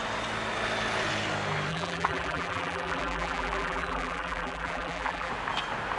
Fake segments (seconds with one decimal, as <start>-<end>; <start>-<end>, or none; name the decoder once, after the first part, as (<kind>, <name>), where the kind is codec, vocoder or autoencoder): 1.7-5.3 (vocoder, BigVGAN v2)